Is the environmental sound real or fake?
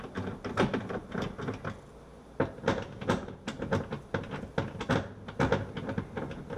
real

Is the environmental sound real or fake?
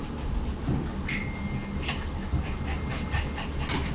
real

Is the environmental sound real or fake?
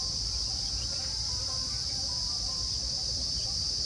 fake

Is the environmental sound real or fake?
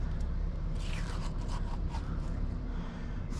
fake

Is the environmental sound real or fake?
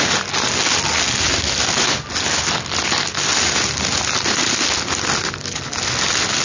real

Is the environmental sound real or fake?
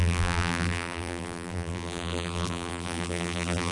fake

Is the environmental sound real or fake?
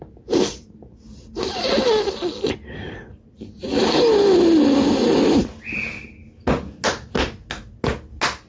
real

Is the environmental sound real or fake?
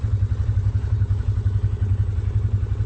real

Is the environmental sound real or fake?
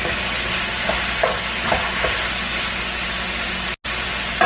real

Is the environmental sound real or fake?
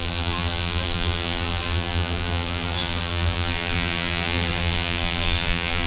fake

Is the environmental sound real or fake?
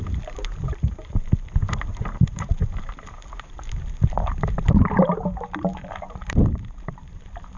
fake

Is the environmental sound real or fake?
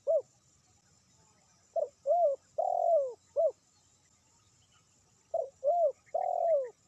real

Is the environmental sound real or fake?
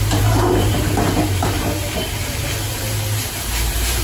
fake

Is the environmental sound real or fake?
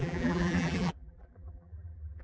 fake